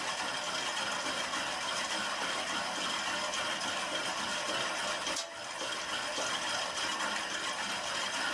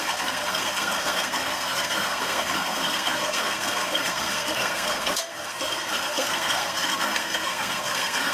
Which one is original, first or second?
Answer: first